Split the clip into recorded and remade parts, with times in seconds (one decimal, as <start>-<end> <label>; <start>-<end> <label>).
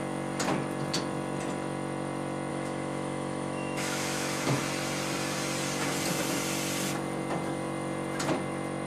0.0-2.5 recorded; 2.5-4.6 remade; 4.6-8.9 recorded